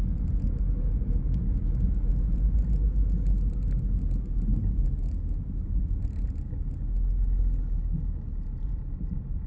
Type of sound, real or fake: real